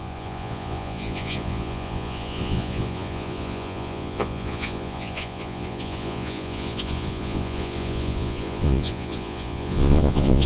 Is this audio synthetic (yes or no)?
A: yes